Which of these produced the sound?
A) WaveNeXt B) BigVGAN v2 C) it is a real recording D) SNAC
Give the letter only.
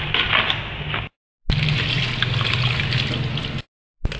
C